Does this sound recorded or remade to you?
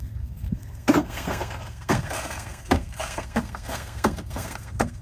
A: remade